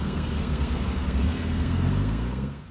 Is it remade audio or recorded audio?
remade